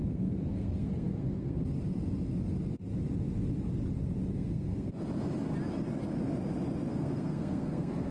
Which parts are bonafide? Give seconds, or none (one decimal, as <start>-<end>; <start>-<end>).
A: 1.6-4.3; 4.9-6.9